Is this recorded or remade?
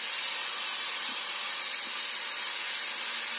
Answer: recorded